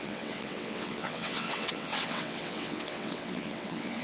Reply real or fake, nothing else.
fake